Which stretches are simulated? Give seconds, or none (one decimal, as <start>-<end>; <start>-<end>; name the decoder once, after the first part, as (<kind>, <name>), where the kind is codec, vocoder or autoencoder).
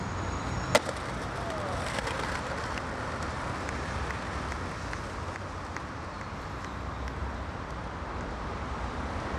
none